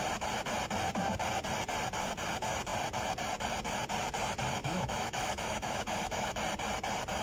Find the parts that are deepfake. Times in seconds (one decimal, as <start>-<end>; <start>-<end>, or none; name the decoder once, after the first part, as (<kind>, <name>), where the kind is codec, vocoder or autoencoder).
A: 4.6-6.4 (autoencoder, DAC-VAE)